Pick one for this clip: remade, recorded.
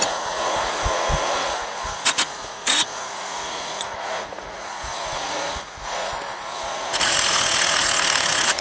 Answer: remade